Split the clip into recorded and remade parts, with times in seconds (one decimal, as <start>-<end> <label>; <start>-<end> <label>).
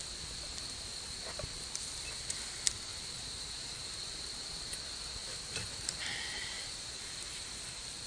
0.0-2.9 recorded; 2.9-4.0 remade; 4.0-5.2 recorded; 5.2-5.9 remade; 5.9-6.4 recorded; 6.4-8.1 remade